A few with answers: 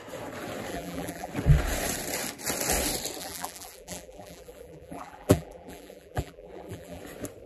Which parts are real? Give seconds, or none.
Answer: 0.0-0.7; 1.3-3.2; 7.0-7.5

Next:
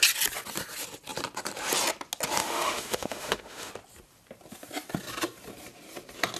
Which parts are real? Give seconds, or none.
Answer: 0.0-2.4; 3.7-6.4

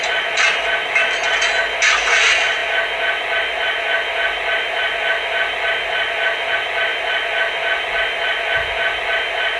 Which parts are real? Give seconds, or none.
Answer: 0.0-9.6

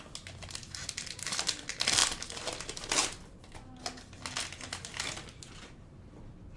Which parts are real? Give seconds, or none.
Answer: 0.0-6.6

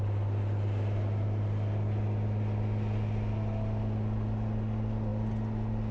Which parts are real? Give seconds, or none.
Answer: 0.0-5.9

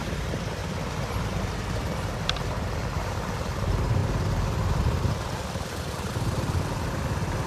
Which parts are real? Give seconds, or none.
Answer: 4.0-5.1